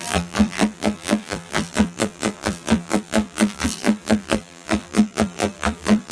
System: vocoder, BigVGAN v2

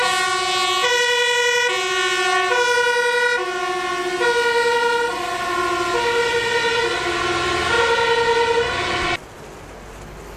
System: none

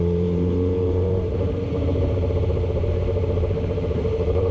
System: vocoder, BigVGAN v2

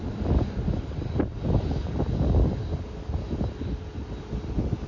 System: none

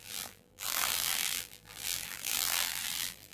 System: vocoder, BigVGAN v2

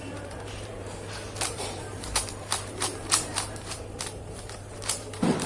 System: vocoder, BigVGAN v2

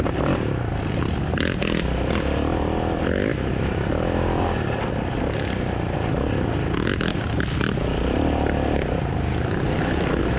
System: vocoder, BigVGAN v2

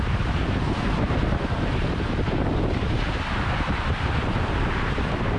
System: vocoder, BigVGAN v2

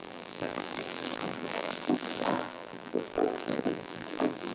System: vocoder, BigVGAN v2